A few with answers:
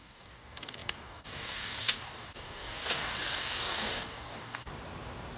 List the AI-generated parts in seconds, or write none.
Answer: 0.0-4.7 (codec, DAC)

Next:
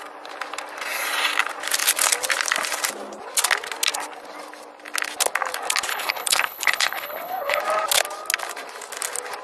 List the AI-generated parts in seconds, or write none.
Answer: 5.9-7.6 (codec, HILCodec)